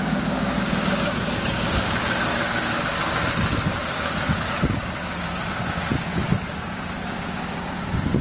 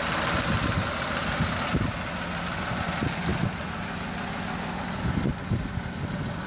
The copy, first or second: first